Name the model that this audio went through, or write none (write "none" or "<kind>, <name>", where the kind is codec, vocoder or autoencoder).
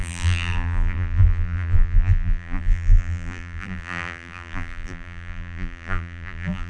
vocoder, BigVGAN v2